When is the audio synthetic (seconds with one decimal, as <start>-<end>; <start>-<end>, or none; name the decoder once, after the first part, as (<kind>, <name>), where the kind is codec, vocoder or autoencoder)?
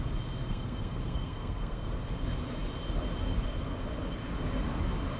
0.5-1.9 (codec, SNAC)